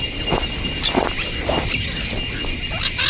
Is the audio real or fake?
real